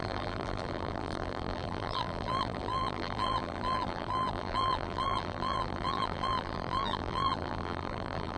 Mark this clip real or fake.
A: fake